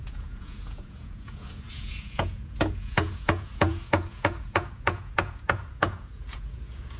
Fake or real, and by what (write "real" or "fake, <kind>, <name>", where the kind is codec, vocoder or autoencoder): fake, vocoder, Vocos